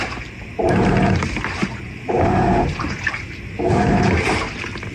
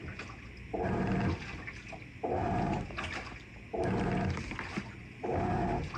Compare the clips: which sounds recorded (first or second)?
second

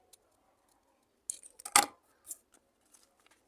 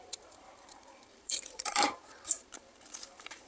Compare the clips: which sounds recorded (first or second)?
first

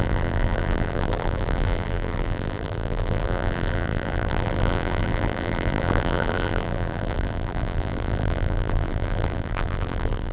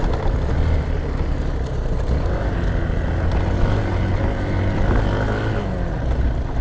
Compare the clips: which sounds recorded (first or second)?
second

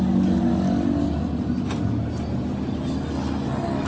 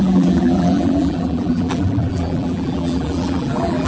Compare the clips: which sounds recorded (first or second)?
first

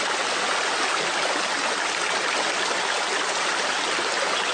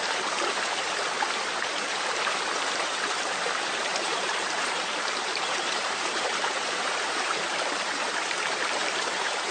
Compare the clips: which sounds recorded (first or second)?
first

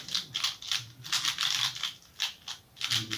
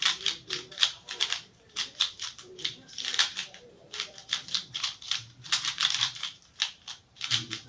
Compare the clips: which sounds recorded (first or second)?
first